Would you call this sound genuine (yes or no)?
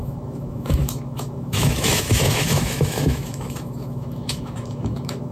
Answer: no